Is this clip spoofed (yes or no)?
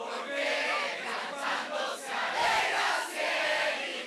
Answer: yes